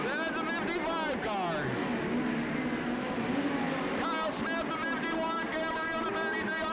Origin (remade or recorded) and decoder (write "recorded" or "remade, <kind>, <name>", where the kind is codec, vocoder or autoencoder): recorded